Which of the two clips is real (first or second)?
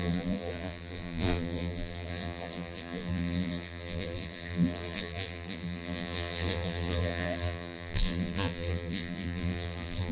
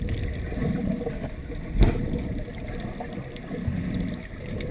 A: second